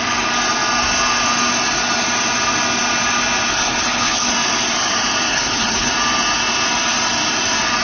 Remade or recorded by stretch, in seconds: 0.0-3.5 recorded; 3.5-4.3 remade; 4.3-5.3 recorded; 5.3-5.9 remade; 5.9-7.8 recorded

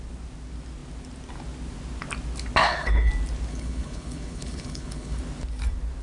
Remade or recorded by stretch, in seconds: 0.0-2.6 recorded; 2.6-3.1 remade; 3.1-3.5 recorded; 3.5-5.2 remade; 5.2-6.0 recorded

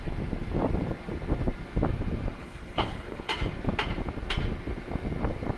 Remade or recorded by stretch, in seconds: 0.0-2.4 recorded; 2.4-3.3 remade; 3.3-5.6 recorded

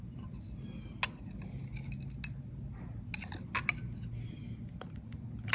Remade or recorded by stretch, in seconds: 0.0-5.5 recorded